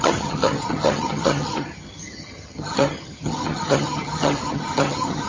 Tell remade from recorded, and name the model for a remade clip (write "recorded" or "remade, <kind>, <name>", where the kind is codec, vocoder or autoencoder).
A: remade, vocoder, HiFi-GAN